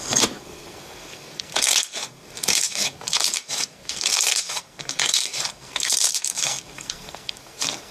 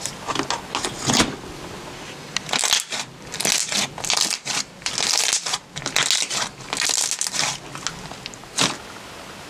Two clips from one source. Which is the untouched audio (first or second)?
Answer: second